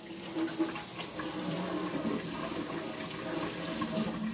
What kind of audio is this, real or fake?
real